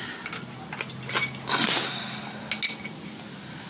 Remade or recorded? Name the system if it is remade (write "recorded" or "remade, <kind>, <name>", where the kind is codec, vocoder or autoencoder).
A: recorded